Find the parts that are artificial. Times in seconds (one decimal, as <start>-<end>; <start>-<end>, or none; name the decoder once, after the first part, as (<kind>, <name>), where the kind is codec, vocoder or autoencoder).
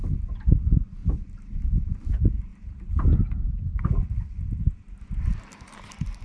1.0-2.1 (vocoder, BigVGAN v2)